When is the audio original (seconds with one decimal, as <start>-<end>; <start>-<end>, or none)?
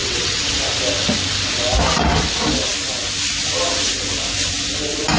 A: 0.6-5.2